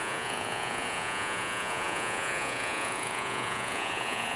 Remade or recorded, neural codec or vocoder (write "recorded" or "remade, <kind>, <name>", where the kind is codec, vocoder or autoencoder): remade, vocoder, Vocos